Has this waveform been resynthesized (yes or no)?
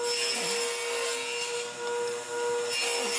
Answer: no